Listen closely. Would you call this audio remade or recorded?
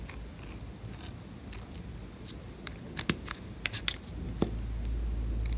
recorded